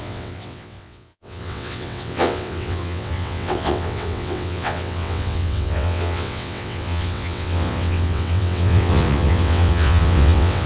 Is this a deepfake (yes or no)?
yes